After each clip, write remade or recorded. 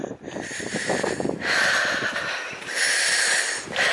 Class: recorded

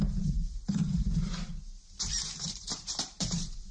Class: remade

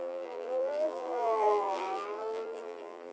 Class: remade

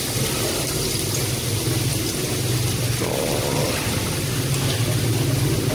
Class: recorded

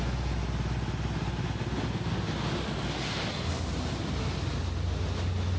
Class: recorded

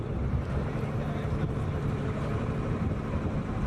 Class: remade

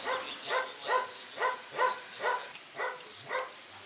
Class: recorded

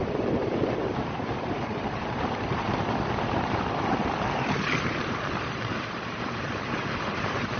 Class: remade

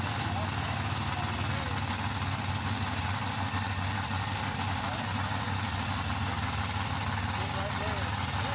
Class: recorded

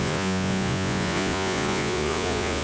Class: remade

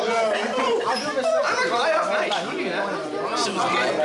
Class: recorded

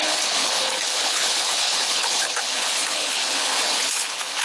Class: remade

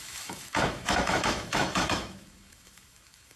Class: remade